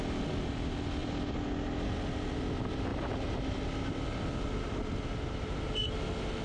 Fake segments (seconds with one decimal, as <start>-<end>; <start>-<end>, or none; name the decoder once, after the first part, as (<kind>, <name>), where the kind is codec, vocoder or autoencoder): 2.9-3.7 (vocoder, BigVGAN v2)